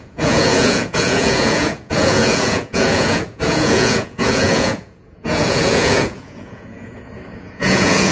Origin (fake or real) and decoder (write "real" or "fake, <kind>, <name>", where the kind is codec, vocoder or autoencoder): fake, vocoder, Vocos